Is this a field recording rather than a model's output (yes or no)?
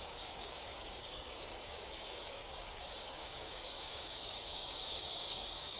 no